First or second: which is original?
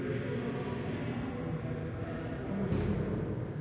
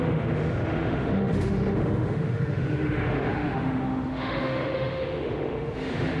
first